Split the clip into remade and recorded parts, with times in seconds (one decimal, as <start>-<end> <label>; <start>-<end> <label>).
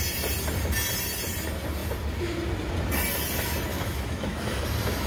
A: 0.0-3.7 recorded; 3.7-4.6 remade; 4.6-5.1 recorded